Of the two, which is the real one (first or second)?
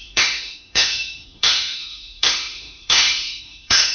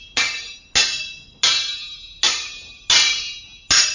second